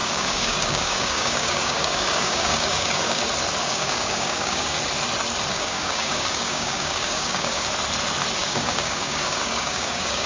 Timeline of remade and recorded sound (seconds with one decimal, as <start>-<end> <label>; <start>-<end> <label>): 0.0-3.2 remade; 3.2-3.6 recorded; 3.6-4.8 remade; 4.8-5.5 recorded; 5.5-7.7 remade; 7.7-8.4 recorded; 8.4-10.3 remade